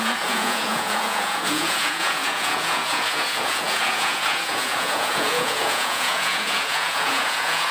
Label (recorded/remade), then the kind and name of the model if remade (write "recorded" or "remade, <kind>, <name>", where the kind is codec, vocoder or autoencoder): remade, vocoder, Vocos